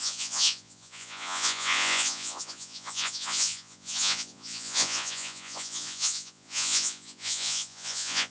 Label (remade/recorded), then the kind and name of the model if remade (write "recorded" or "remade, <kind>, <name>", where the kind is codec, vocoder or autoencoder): remade, vocoder, Vocos